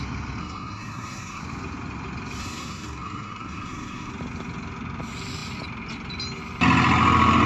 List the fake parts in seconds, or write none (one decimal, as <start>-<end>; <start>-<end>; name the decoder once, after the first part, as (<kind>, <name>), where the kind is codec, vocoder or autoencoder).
0.4-1.4 (codec, SNAC); 2.4-4.1